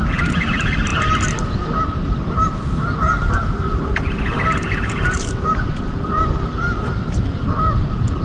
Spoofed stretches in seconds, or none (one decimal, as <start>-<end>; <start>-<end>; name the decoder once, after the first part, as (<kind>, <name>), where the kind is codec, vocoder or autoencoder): 0.0-8.2 (vocoder, BigVGAN v2)